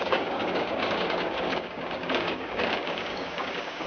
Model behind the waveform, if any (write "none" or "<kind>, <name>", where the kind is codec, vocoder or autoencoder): codec, DAC